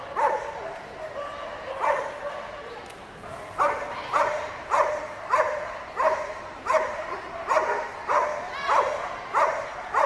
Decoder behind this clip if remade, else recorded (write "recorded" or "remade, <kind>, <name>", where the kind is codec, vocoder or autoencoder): recorded